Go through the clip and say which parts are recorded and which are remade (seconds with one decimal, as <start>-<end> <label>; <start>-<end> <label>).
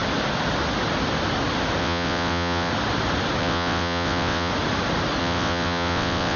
0.0-1.8 recorded; 1.8-2.7 remade; 2.7-3.4 recorded; 3.4-4.5 remade; 4.5-5.2 recorded; 5.2-6.4 remade